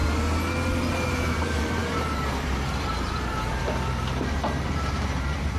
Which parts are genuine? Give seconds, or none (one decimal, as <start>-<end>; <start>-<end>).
0.0-0.9